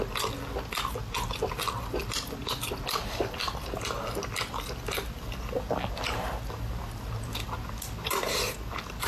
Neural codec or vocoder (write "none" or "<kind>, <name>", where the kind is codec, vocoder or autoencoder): none